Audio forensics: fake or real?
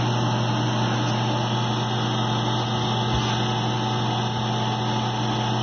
real